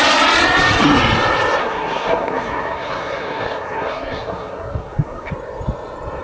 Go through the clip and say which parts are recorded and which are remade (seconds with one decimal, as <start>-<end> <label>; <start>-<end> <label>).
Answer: 0.0-1.6 recorded; 1.6-5.3 remade; 5.3-6.2 recorded